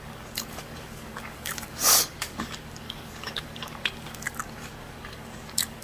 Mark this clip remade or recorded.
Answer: remade